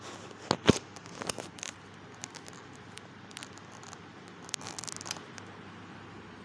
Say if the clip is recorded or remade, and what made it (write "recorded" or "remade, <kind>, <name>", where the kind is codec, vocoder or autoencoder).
recorded